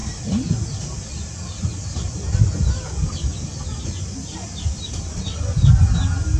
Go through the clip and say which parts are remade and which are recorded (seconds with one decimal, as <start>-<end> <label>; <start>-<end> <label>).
0.0-0.8 remade; 0.8-3.3 recorded; 3.3-5.4 remade; 5.4-6.4 recorded